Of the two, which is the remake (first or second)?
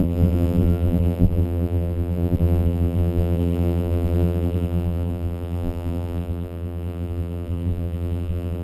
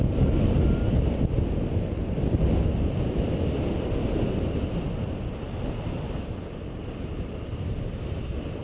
first